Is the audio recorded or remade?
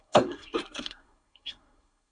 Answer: remade